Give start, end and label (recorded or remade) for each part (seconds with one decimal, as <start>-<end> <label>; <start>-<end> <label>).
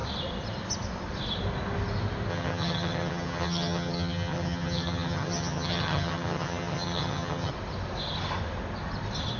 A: 0.0-2.3 recorded; 2.3-7.5 remade; 7.5-9.4 recorded